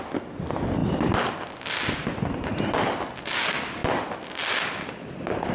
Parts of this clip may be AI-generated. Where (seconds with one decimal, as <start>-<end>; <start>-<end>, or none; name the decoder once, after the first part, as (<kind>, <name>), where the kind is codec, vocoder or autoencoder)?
none